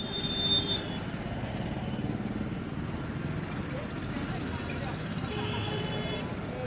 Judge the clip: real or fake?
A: real